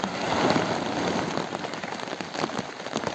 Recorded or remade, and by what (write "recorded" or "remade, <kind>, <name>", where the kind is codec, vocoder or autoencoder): recorded